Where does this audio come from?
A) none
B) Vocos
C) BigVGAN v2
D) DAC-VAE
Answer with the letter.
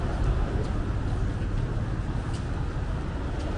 A